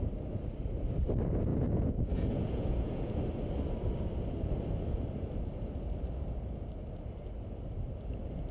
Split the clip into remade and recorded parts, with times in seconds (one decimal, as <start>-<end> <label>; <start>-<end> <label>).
0.0-1.5 recorded; 1.5-3.2 remade; 3.2-8.5 recorded